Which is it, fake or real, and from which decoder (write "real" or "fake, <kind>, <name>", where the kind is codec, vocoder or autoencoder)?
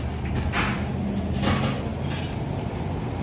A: real